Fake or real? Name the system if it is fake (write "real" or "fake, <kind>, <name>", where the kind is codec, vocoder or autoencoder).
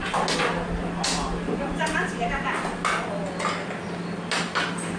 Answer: real